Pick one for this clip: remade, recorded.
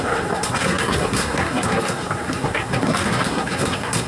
remade